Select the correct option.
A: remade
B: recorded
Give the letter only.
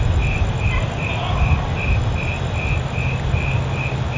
B